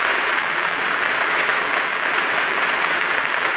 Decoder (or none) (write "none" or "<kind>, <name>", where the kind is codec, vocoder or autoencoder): vocoder, WaveNeXt